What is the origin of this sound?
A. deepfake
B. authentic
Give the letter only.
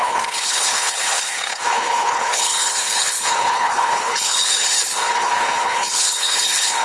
A